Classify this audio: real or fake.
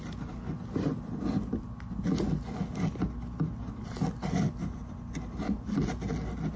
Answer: real